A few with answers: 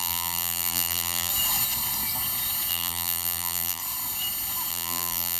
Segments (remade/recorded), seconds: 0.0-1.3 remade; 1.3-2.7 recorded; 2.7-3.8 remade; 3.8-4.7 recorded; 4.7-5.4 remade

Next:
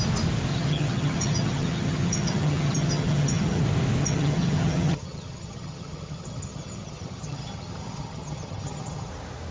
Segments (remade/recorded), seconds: 0.0-0.5 recorded; 0.5-3.6 remade; 3.6-4.0 recorded; 4.0-9.1 remade; 9.1-9.5 recorded

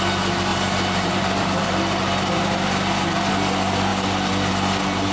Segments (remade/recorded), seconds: 0.0-0.5 recorded; 0.5-3.3 remade; 3.3-5.1 recorded

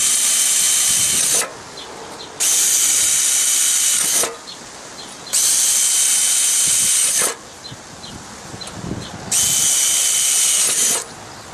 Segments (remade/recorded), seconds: 0.0-11.5 recorded

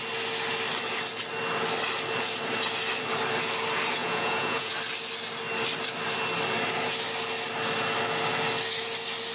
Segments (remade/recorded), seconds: 0.0-4.0 recorded; 4.0-4.7 remade; 4.7-9.3 recorded

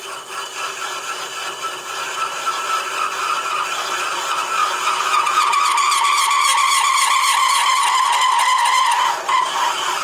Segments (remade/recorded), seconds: 0.0-4.6 recorded; 4.6-5.6 remade; 5.6-10.0 recorded

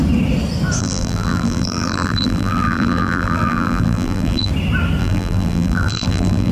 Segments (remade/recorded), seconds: 0.0-0.8 recorded; 0.8-4.5 remade; 4.5-5.0 recorded; 5.0-6.5 remade

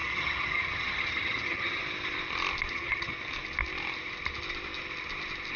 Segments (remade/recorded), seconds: 0.0-1.8 remade; 1.8-2.7 recorded; 2.7-3.1 remade; 3.1-5.6 recorded